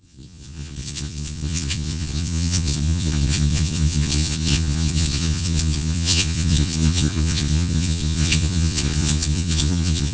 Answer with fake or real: fake